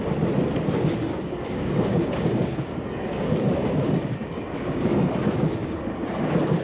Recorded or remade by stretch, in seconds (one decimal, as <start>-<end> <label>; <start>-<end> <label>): 0.0-1.1 recorded; 1.1-5.1 remade; 5.1-5.6 recorded; 5.6-6.6 remade